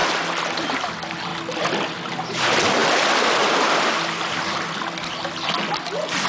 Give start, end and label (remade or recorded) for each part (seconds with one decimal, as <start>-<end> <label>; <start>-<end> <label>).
0.0-2.8 recorded; 2.8-3.4 remade; 3.4-6.3 recorded